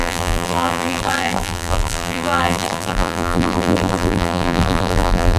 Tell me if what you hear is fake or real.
fake